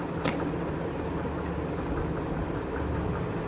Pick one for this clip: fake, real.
real